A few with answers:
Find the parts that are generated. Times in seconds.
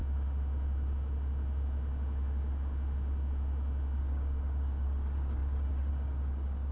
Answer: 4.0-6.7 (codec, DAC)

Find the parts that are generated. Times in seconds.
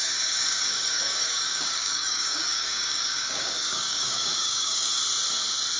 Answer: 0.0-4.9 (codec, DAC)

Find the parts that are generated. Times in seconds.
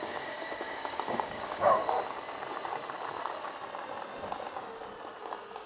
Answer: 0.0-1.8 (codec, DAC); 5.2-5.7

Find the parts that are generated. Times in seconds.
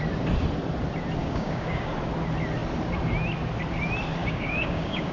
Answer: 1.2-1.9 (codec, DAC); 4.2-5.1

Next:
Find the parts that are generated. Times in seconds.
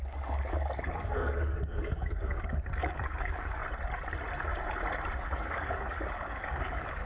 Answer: 0.0-3.6 (codec, DAC); 5.2-7.1